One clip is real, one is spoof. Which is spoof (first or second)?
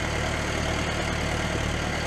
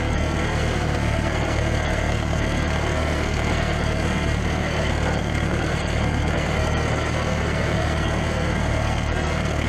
second